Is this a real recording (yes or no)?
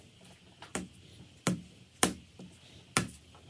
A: yes